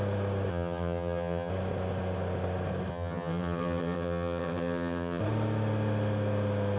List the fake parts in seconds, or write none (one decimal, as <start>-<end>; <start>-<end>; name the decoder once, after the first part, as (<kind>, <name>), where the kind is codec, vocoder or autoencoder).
0.5-1.5 (vocoder, HiFi-GAN); 2.9-5.2